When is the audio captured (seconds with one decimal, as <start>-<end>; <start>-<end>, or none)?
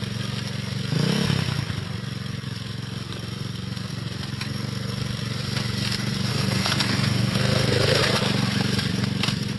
0.0-6.3; 8.0-9.6